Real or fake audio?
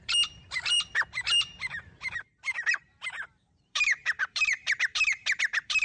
fake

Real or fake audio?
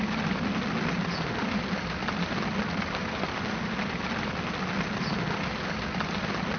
real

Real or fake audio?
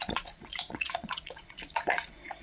fake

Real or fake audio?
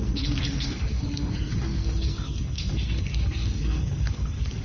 fake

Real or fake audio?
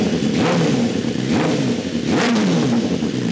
real